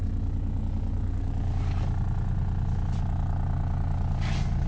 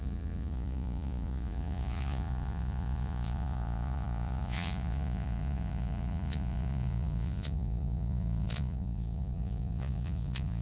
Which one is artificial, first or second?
second